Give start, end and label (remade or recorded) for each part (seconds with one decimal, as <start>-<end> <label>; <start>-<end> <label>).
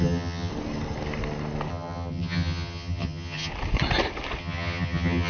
0.0-0.5 remade; 0.5-1.7 recorded; 1.7-3.5 remade; 3.5-4.4 recorded; 4.4-5.3 remade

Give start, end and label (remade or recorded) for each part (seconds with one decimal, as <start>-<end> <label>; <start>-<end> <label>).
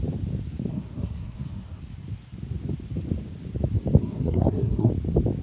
0.0-0.7 recorded; 0.7-1.8 remade; 1.8-4.0 recorded; 4.0-4.9 remade; 4.9-5.4 recorded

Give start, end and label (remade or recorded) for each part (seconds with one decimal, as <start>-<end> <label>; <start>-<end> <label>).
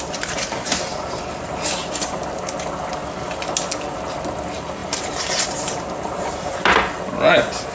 0.0-4.8 recorded; 4.8-6.6 remade; 6.6-7.7 recorded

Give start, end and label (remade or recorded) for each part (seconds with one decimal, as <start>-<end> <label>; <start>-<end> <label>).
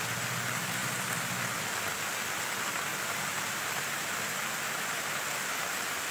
0.0-6.1 recorded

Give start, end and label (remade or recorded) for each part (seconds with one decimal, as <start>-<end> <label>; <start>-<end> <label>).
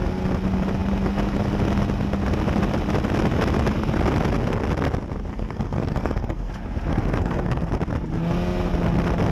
0.0-5.3 recorded; 5.3-6.5 remade; 6.5-6.9 recorded; 6.9-7.7 remade; 7.7-9.3 recorded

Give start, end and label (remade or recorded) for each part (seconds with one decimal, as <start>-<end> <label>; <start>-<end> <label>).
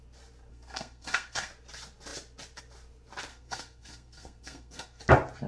0.0-0.5 recorded; 0.5-1.5 remade; 1.5-3.3 recorded; 3.3-5.0 remade; 5.0-5.5 recorded